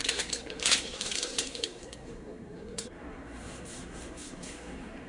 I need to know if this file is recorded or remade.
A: remade